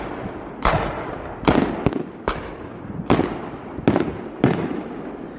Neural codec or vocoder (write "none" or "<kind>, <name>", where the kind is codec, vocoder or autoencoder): none